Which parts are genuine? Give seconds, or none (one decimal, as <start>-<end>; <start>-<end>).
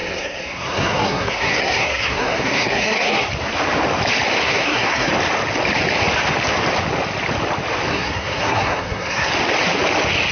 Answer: 3.3-4.4; 5.1-7.9; 9.3-10.3